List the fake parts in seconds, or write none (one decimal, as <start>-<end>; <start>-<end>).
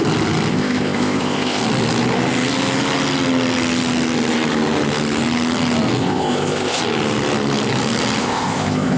0.5-1.6; 6.0-6.8; 8.2-9.0